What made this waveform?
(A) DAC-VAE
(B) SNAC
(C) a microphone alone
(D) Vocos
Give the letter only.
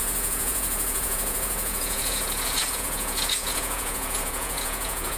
D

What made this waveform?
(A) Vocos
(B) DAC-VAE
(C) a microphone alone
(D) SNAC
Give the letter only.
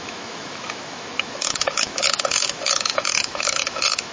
B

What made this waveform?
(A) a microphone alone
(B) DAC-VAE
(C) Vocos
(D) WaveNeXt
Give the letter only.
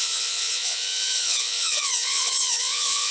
C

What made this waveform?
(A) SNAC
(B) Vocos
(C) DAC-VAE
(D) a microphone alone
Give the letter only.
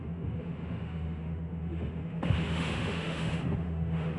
C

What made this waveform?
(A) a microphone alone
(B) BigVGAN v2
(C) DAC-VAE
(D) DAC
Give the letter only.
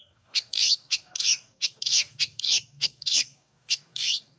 D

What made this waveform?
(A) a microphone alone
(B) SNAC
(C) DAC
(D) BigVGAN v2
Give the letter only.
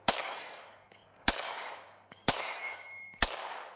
C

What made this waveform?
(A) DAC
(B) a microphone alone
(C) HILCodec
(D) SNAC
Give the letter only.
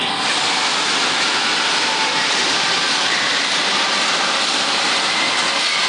B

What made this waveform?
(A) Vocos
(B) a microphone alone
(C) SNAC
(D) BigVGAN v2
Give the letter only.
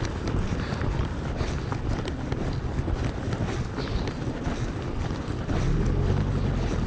B